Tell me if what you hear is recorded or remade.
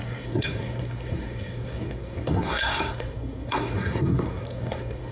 remade